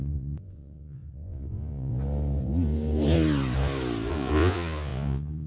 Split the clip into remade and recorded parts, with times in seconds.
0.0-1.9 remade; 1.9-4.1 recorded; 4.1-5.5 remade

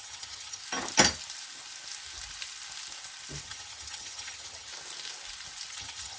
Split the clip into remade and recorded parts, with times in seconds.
0.0-0.6 remade; 0.6-3.4 recorded; 3.4-4.7 remade; 4.7-5.7 recorded; 5.7-6.2 remade

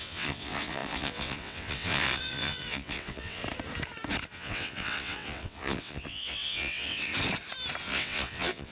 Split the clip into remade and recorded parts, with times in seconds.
0.0-3.4 remade; 3.4-4.3 recorded; 4.3-7.1 remade; 7.1-7.8 recorded; 7.8-8.7 remade

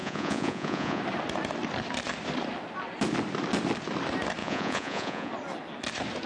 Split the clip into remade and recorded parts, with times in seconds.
0.0-1.0 remade; 1.0-4.4 recorded; 4.4-5.3 remade; 5.3-6.3 recorded

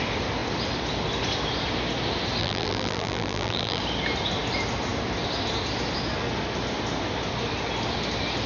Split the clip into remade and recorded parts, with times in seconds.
0.0-2.4 recorded; 2.4-3.8 remade; 3.8-8.5 recorded

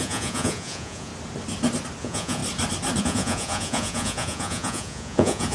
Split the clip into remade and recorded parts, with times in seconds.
0.0-1.1 remade; 1.1-2.0 recorded; 2.0-2.4 remade; 2.4-3.0 recorded; 3.0-5.5 remade

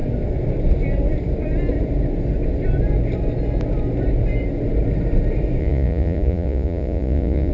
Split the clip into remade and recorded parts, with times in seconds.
0.0-5.6 recorded; 5.6-7.5 remade